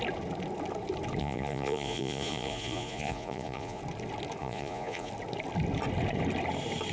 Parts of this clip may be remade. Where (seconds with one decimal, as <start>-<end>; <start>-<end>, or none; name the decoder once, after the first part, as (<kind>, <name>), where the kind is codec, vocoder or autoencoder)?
1.2-3.8 (vocoder, Vocos); 4.4-5.1